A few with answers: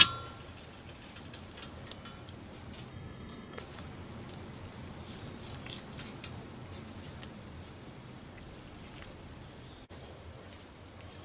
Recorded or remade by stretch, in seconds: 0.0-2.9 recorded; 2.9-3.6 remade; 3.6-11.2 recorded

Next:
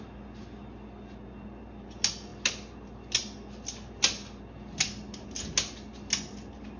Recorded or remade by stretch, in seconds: 0.0-6.8 recorded

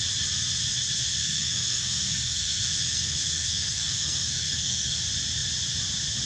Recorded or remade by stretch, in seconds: 0.0-1.2 recorded; 1.2-5.0 remade; 5.0-6.3 recorded

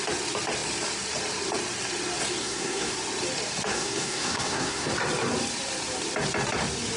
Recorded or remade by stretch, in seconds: 0.0-2.4 recorded; 2.4-2.9 remade; 2.9-3.7 recorded; 3.7-4.9 remade; 4.9-7.0 recorded

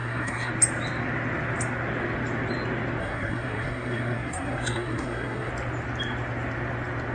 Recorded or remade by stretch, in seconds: 0.0-0.5 remade; 0.5-3.0 recorded; 3.0-5.5 remade; 5.5-7.1 recorded

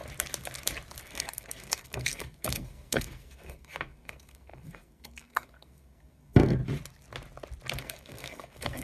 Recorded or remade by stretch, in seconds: 0.0-1.0 recorded; 1.0-6.6 remade; 6.6-7.8 recorded; 7.8-8.8 remade

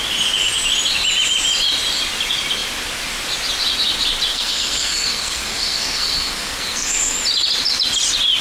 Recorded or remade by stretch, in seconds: 0.0-4.3 recorded; 4.3-7.2 remade; 7.2-8.4 recorded

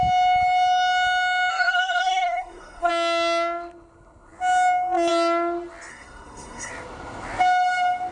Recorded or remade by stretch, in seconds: 0.0-1.5 recorded; 1.5-2.9 remade; 2.9-5.9 recorded; 5.9-6.7 remade; 6.7-8.1 recorded